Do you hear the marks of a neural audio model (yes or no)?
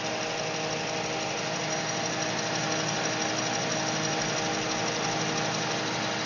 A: no